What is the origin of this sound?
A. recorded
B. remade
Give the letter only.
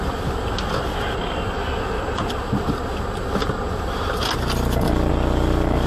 A